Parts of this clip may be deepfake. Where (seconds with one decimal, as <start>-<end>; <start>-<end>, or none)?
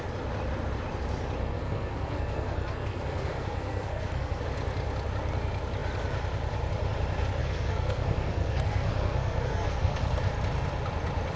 1.4-4.4; 7.4-10.0